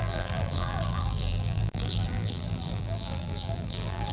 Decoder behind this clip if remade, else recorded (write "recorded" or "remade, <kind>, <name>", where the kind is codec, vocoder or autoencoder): remade, vocoder, BigVGAN v2